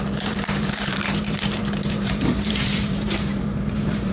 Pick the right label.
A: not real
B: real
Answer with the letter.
A